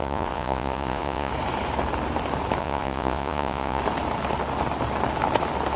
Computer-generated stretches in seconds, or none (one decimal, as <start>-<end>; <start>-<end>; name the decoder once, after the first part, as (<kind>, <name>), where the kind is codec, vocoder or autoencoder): 0.0-1.3 (vocoder, Vocos); 2.6-3.8

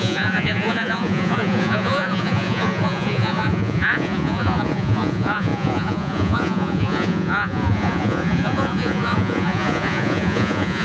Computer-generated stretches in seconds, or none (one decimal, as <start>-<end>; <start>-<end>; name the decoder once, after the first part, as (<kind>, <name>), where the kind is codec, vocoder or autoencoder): 0.0-10.8 (vocoder, Vocos)

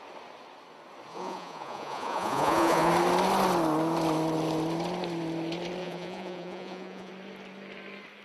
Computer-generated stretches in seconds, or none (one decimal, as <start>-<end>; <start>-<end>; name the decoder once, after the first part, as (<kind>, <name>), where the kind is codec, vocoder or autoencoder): 1.1-2.9 (vocoder, Vocos); 5.8-7.1

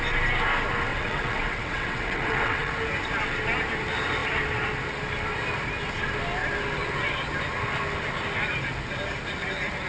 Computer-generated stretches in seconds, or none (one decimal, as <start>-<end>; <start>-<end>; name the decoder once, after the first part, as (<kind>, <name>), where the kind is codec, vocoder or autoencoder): 0.9-2.7 (vocoder, WaveNeXt)